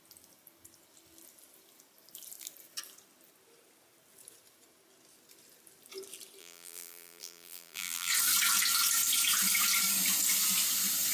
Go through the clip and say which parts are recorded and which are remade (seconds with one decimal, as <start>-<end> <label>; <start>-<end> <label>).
0.0-6.4 recorded; 6.4-8.1 remade; 8.1-11.1 recorded